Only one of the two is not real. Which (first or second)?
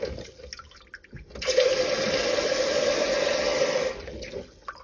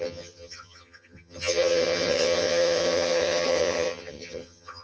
second